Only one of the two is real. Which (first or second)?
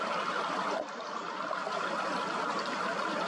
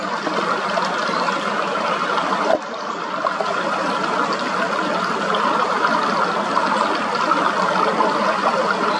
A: second